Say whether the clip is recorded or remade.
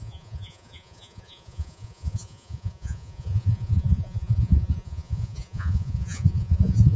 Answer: remade